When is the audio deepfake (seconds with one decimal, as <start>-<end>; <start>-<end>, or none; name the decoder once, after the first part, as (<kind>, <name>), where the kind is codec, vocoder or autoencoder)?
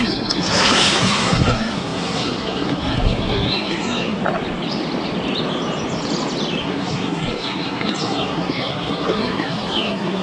0.0-4.2 (codec, SNAC); 6.6-10.2